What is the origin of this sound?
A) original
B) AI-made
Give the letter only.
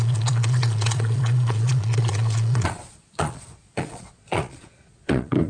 B